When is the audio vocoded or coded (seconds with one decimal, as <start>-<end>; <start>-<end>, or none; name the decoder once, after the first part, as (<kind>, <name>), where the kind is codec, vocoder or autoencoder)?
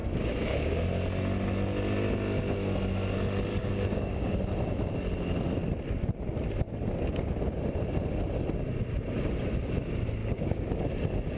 0.0-0.9 (codec, DAC); 3.5-4.3; 10.2-10.8